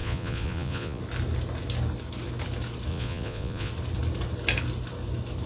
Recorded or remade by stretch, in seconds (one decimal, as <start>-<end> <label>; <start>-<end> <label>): 0.0-1.0 remade; 1.0-2.9 recorded; 2.9-3.7 remade; 3.7-5.5 recorded

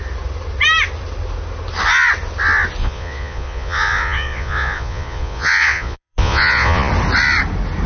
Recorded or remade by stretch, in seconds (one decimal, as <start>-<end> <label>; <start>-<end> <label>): 0.0-2.8 recorded; 2.8-6.9 remade; 6.9-7.9 recorded

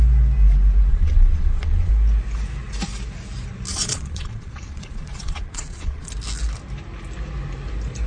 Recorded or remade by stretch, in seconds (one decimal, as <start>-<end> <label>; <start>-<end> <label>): 0.0-0.9 recorded; 0.9-1.9 remade; 1.9-3.7 recorded; 3.7-6.1 remade; 6.1-8.1 recorded

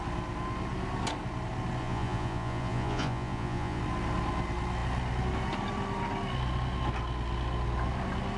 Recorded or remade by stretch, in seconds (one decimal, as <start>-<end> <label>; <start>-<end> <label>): 0.0-1.8 recorded; 1.8-3.8 remade; 3.8-8.4 recorded

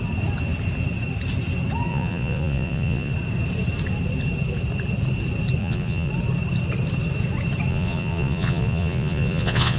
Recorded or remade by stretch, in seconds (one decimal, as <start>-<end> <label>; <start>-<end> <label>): 0.0-1.9 recorded; 1.9-3.1 remade; 3.1-5.6 recorded; 5.6-6.1 remade; 6.1-7.7 recorded; 7.7-9.8 remade

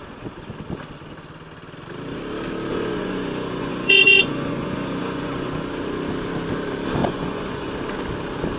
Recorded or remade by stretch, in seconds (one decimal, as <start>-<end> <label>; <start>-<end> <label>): 0.0-2.7 recorded; 2.7-5.5 remade; 5.5-7.0 recorded; 7.0-7.7 remade; 7.7-8.6 recorded

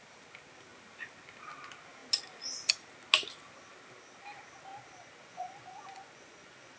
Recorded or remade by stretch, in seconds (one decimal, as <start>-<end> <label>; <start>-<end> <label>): 0.0-5.0 recorded; 5.0-6.8 remade

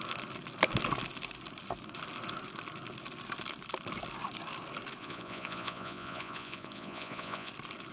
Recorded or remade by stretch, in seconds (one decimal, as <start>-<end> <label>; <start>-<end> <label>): 0.0-5.0 recorded; 5.0-7.5 remade; 7.5-7.9 recorded